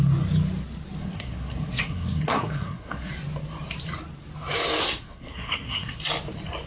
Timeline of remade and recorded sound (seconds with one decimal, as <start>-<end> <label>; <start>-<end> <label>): 0.0-1.0 recorded; 1.0-3.1 remade; 3.1-4.8 recorded; 4.8-6.0 remade; 6.0-6.7 recorded